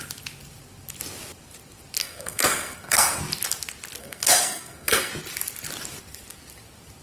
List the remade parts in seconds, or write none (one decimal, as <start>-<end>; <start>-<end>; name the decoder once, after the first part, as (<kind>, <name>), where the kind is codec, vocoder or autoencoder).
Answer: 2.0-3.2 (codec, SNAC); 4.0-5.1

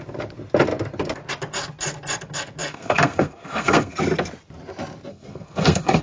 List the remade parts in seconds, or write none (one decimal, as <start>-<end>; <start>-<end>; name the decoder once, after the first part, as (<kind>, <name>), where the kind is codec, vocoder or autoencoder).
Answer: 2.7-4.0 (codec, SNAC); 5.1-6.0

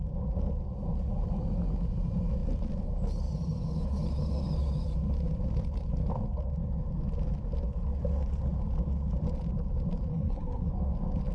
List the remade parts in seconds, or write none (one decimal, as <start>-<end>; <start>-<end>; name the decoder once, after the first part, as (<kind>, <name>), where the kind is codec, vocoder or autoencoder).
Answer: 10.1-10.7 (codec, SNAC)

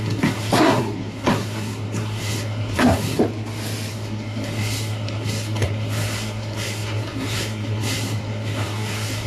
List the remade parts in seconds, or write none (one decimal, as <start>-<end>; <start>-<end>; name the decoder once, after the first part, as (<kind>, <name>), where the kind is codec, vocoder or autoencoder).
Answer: 0.0-3.2 (codec, SNAC); 3.9-9.3

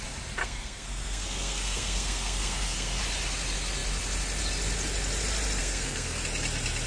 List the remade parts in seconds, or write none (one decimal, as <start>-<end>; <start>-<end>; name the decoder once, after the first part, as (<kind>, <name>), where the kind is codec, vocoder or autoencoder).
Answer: 0.4-3.0 (codec, SNAC); 5.6-6.2